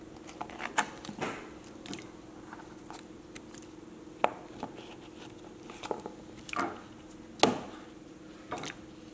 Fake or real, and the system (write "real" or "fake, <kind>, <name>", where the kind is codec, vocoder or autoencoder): real